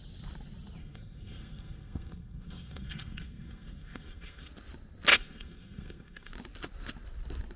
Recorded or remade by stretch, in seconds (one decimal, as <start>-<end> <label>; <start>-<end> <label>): 0.0-0.8 recorded; 0.8-4.5 remade; 4.5-5.1 recorded; 5.1-6.3 remade; 6.3-7.6 recorded